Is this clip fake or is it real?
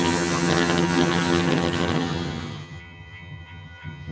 fake